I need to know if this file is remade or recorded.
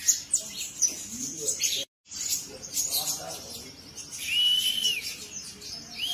recorded